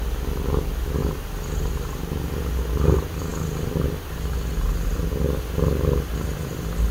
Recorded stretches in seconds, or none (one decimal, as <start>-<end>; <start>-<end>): 0.0-6.9